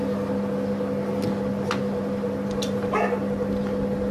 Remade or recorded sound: recorded